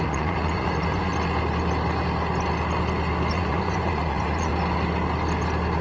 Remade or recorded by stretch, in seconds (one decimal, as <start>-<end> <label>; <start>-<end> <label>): 0.0-1.1 remade; 1.1-3.3 recorded; 3.3-4.5 remade; 4.5-5.8 recorded